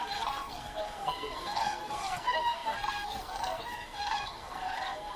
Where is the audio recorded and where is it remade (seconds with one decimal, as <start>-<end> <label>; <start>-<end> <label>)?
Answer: 0.0-5.2 remade

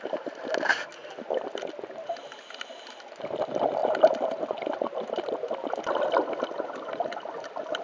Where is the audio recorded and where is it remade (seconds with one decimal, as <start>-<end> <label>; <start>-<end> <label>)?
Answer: 0.0-7.8 recorded